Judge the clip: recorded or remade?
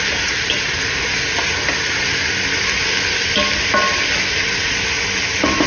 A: recorded